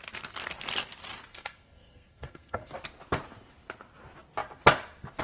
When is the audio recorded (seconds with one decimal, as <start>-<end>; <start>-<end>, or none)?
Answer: 0.0-1.3; 2.7-5.2